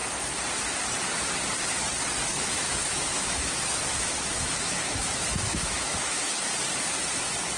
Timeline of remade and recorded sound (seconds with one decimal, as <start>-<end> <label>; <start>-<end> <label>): 0.0-2.3 recorded; 2.3-6.3 remade; 6.3-7.6 recorded